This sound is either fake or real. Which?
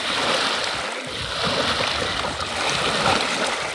real